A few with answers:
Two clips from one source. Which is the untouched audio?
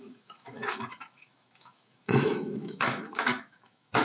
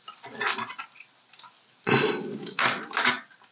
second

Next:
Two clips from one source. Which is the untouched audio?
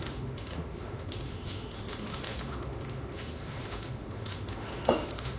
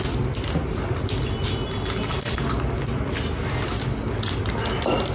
second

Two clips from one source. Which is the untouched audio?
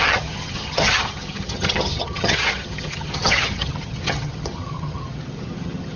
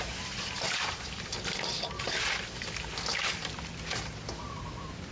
second